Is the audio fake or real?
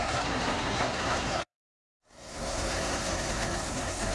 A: fake